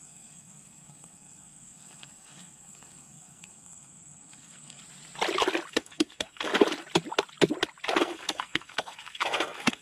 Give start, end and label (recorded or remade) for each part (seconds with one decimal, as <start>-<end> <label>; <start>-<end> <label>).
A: 0.0-4.8 remade; 4.8-5.7 recorded; 5.7-6.5 remade; 6.5-8.0 recorded; 8.0-9.8 remade